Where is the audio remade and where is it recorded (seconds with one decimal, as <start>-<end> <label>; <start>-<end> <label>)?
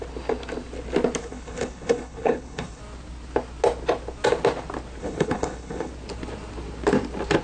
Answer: 0.0-1.2 recorded; 1.2-2.8 remade; 2.8-5.0 recorded; 5.0-5.9 remade; 5.9-7.4 recorded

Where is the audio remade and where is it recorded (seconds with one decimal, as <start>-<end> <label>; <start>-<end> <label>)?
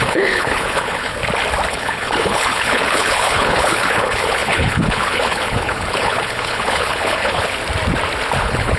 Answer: 0.0-1.1 remade; 1.1-1.7 recorded; 1.7-7.6 remade; 7.6-8.4 recorded; 8.4-8.8 remade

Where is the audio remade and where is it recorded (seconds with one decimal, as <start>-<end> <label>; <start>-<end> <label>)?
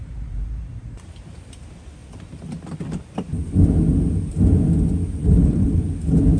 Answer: 0.0-5.2 recorded; 5.2-5.8 remade; 5.8-6.4 recorded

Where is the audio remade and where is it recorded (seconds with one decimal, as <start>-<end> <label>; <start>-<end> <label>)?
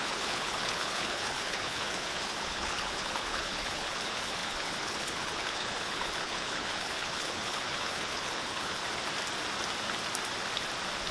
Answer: 0.0-8.8 remade; 8.8-11.1 recorded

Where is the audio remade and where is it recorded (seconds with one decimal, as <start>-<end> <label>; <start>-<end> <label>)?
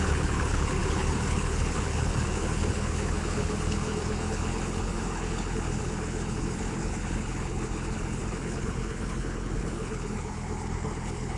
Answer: 0.0-11.4 remade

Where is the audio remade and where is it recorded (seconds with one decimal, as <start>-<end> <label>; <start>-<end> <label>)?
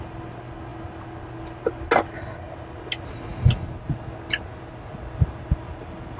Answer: 0.0-6.2 recorded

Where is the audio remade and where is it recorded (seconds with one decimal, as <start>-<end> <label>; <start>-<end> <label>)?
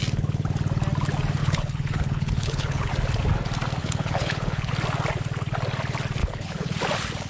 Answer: 0.0-1.4 recorded; 1.4-2.9 remade; 2.9-3.8 recorded; 3.8-4.7 remade; 4.7-6.2 recorded; 6.2-6.8 remade; 6.8-7.3 recorded